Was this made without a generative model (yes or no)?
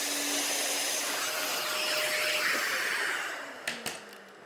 yes